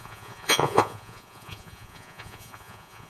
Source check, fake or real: fake